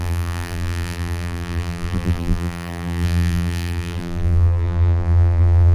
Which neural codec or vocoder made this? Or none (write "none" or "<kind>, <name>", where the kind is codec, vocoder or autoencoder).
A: vocoder, BigVGAN v2